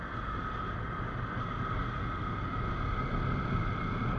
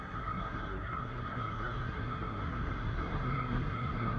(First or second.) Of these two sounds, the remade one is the second